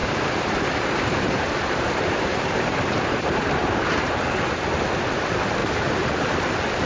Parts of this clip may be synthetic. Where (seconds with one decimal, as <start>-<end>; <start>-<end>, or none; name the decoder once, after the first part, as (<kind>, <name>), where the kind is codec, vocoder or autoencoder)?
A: 0.0-4.1 (vocoder, BigVGAN v2); 5.6-6.5